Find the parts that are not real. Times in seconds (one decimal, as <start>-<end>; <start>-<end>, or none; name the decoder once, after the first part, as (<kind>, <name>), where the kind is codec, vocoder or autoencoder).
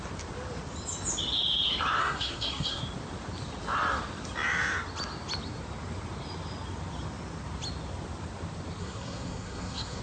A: 2.0-2.8 (codec, SNAC); 8.8-10.0